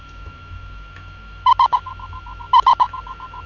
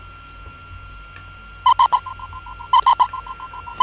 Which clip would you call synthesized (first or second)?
first